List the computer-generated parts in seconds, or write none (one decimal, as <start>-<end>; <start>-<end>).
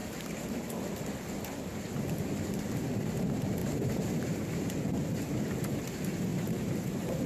0.0-0.7; 3.6-4.4; 6.3-7.3